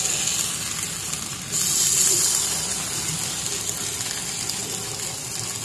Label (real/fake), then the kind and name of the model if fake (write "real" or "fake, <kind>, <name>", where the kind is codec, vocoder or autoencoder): real